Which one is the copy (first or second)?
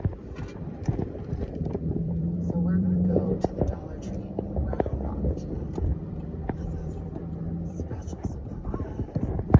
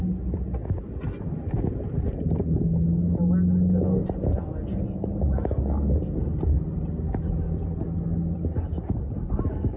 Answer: first